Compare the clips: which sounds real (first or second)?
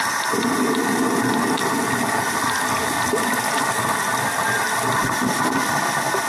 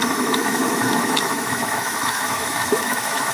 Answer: first